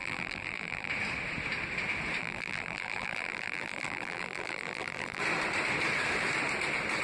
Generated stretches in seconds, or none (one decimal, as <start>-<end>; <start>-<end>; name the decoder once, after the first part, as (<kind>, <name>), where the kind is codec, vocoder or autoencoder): 0.0-0.9 (vocoder, BigVGAN v2); 2.2-5.2